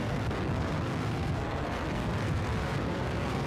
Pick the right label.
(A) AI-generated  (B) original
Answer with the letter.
A